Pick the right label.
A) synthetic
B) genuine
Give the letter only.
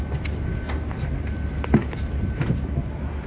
B